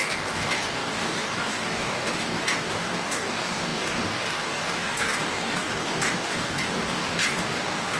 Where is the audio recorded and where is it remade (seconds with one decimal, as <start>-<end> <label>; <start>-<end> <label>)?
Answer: 0.0-8.0 remade